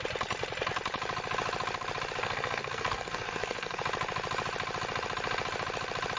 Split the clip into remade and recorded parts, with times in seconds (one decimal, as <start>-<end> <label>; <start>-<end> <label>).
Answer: 0.0-2.2 recorded; 2.2-3.8 remade; 3.8-6.2 recorded